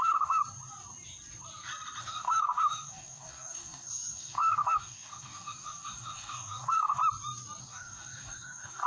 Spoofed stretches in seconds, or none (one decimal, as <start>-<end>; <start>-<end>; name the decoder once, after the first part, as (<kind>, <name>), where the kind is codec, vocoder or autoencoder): 0.0-0.4 (codec, DAC); 2.0-7.0; 7.6-8.9